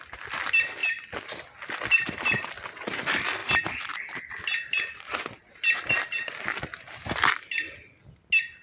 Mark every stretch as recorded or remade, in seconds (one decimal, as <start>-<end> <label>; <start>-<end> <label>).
0.0-8.6 recorded